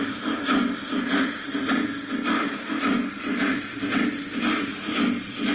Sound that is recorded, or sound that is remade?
recorded